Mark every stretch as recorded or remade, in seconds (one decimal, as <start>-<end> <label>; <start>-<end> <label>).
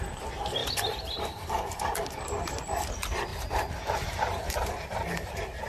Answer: 0.0-0.6 recorded; 0.6-1.8 remade; 1.8-3.3 recorded; 3.3-5.3 remade; 5.3-5.7 recorded